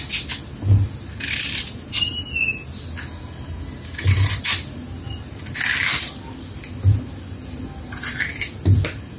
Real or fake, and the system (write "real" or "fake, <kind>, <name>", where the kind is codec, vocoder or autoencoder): real